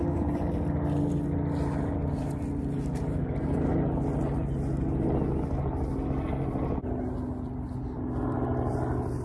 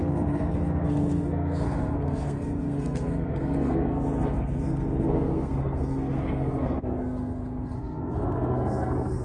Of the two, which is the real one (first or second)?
first